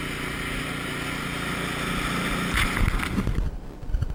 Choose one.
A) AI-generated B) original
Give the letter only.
B